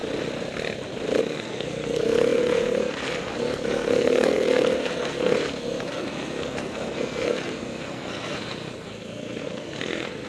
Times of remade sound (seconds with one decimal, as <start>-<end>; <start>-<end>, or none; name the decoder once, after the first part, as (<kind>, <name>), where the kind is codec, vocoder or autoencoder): 1.2-10.3 (codec, SNAC)